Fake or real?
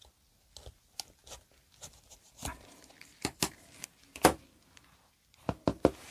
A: real